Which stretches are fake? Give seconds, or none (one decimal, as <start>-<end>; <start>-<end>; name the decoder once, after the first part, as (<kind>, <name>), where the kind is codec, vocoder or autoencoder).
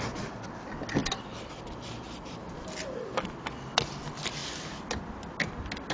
1.0-3.1 (vocoder, BigVGAN v2); 4.4-5.1